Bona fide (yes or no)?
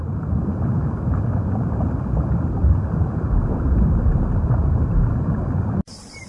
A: yes